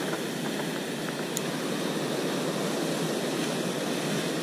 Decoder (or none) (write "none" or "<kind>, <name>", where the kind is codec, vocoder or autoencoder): none